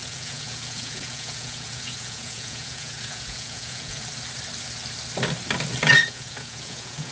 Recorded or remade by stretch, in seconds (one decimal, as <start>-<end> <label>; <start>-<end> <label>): 0.0-4.0 remade; 4.0-6.0 recorded; 6.0-7.1 remade